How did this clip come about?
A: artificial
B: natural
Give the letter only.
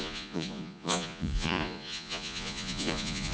A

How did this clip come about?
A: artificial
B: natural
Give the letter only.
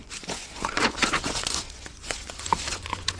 A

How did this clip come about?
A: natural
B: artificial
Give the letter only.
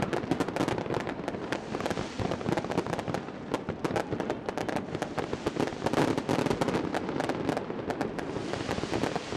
A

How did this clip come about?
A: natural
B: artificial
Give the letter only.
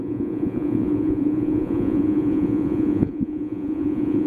B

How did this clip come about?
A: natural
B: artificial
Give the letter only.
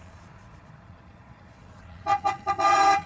B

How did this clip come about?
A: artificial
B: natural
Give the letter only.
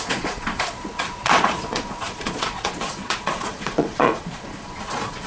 A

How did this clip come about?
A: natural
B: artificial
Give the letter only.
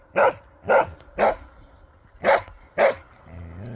A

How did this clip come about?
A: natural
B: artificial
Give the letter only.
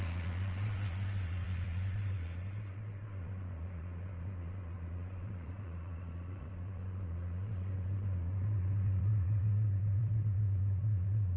B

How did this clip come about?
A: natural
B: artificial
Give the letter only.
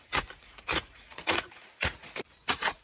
B